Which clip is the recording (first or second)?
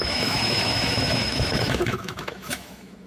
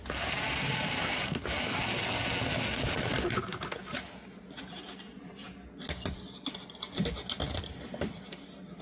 second